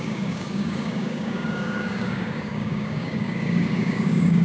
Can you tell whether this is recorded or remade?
remade